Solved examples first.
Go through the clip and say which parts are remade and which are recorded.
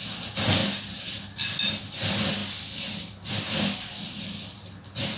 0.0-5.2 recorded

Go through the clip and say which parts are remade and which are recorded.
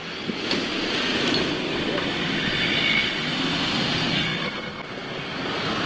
0.0-5.9 recorded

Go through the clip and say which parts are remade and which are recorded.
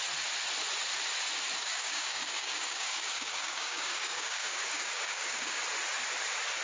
0.0-1.6 recorded; 1.6-5.6 remade; 5.6-6.6 recorded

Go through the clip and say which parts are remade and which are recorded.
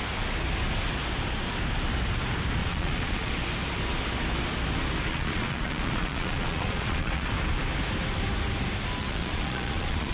0.0-2.6 recorded; 2.6-3.3 remade; 3.3-5.1 recorded; 5.1-7.3 remade; 7.3-9.0 recorded; 9.0-10.1 remade